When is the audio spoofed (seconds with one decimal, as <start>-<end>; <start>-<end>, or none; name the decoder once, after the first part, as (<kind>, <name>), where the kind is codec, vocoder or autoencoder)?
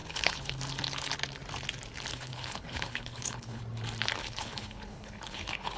0.0-0.6 (codec, HILCodec); 2.1-3.6; 4.2-5.8